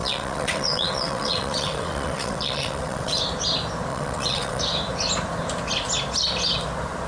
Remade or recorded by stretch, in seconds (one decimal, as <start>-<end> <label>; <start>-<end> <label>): 0.0-3.2 remade; 3.2-3.9 recorded; 3.9-4.6 remade; 4.6-7.1 recorded